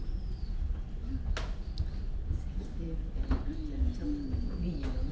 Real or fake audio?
real